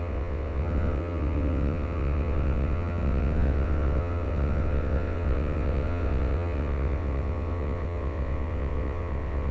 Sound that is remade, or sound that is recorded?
remade